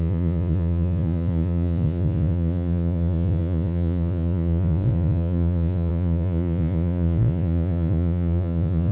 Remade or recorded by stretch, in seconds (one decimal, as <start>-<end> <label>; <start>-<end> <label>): 0.0-8.9 remade